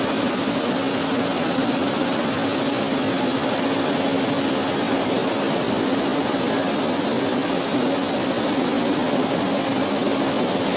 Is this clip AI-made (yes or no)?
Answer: no